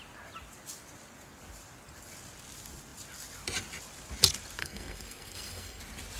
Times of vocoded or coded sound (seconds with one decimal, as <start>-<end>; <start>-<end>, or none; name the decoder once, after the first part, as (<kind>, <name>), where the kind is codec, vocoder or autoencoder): 4.6-5.8 (codec, SNAC)